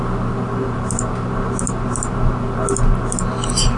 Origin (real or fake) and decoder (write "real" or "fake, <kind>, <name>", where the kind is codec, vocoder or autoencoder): real